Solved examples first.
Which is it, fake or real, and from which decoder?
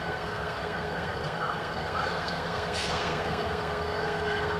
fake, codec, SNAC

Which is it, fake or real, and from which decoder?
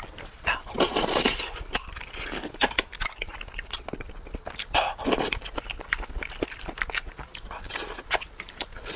real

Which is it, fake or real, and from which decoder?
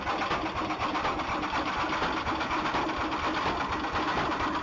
real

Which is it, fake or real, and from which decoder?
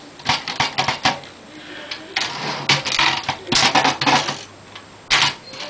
real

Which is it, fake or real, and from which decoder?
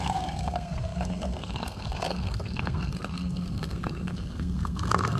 fake, codec, SNAC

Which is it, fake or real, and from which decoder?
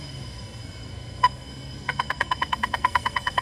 fake, codec, SNAC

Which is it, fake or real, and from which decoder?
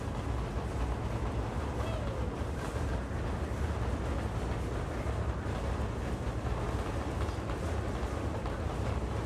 real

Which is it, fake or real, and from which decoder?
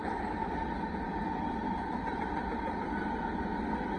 real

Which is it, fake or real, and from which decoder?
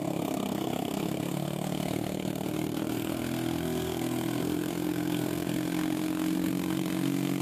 fake, codec, SNAC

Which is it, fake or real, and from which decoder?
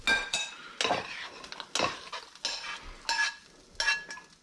real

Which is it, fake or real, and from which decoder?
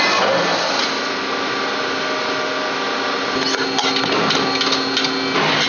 real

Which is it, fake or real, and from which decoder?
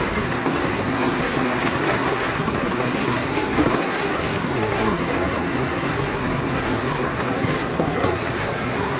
fake, codec, SNAC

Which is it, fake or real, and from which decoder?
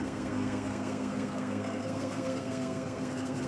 fake, codec, SNAC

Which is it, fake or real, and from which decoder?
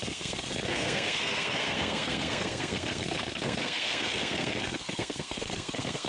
fake, codec, SNAC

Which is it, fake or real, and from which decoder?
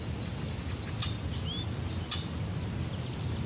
real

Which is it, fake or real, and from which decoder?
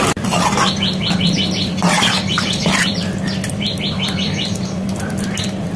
real